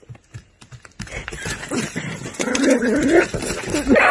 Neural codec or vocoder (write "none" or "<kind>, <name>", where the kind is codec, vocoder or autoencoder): none